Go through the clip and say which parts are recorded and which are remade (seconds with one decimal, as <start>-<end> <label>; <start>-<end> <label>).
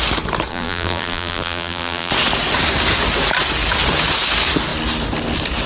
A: 0.0-0.5 recorded; 0.5-2.1 remade; 2.1-5.7 recorded